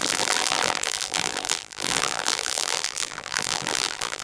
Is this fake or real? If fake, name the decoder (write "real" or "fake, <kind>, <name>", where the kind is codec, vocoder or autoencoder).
fake, vocoder, BigVGAN v2